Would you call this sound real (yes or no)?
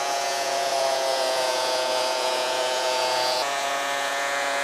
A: no